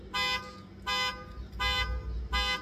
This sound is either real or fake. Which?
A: real